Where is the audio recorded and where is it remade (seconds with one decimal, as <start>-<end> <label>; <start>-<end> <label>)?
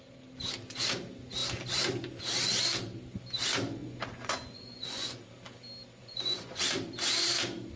0.0-3.8 recorded; 3.8-5.2 remade; 5.2-6.0 recorded; 6.0-6.6 remade; 6.6-7.8 recorded